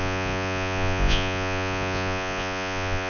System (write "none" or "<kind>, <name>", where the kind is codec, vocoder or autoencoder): vocoder, Vocos